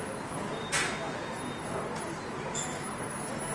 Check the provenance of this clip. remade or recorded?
recorded